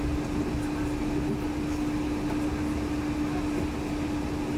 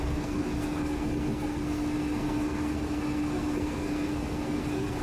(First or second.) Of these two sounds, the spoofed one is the second